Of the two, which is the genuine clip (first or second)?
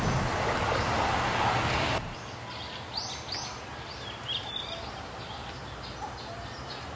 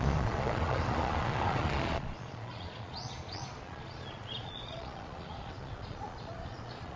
first